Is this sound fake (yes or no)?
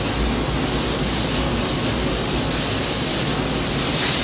no